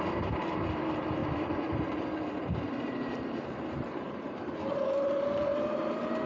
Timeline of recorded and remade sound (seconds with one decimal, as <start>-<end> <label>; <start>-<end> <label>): 0.0-6.3 remade